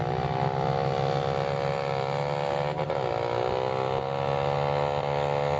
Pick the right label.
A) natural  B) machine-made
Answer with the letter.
A